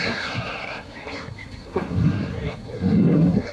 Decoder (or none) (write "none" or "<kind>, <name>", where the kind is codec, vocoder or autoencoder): codec, SNAC